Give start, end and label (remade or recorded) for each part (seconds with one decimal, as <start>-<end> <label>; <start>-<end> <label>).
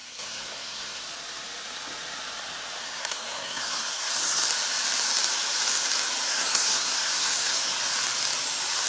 0.0-1.0 remade; 1.0-2.8 recorded; 2.8-4.1 remade; 4.1-6.3 recorded; 6.3-7.7 remade; 7.7-8.9 recorded